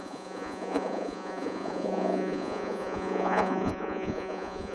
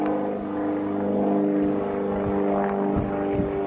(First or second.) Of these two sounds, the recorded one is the second